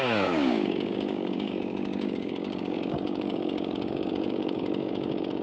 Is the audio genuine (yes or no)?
no